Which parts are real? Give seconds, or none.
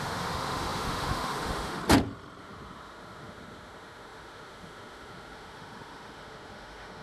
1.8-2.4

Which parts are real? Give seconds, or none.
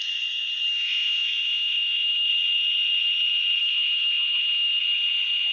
0.0-0.7; 2.3-3.6; 4.8-5.5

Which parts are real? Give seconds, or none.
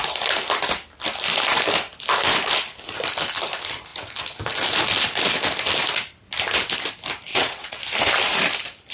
0.0-7.3; 7.8-8.9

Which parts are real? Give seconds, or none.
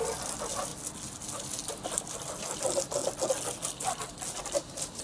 0.0-5.0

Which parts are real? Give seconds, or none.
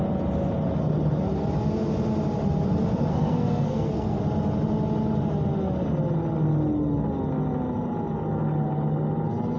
0.0-3.1; 4.2-9.6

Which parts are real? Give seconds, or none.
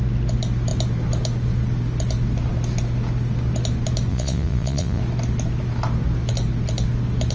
0.0-4.1; 5.0-7.3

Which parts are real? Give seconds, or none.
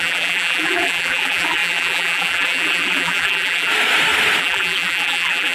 3.7-4.4